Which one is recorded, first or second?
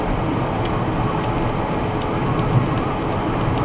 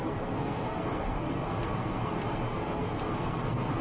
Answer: first